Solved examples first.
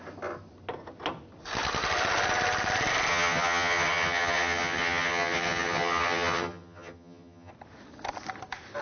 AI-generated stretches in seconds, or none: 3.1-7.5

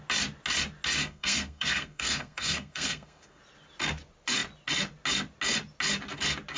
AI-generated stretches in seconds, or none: 1.0-3.4

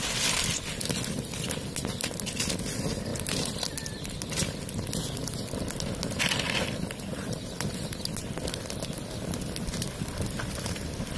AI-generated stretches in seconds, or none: none

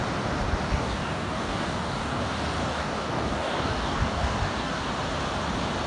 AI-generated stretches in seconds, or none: 0.7-2.2; 2.6-4.9